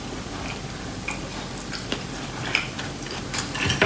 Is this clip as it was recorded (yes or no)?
yes